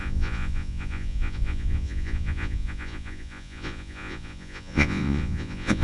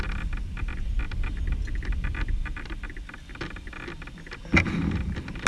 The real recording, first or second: second